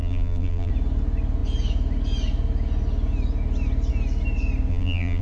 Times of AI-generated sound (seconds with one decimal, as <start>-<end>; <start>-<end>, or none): 0.0-0.7; 4.7-5.2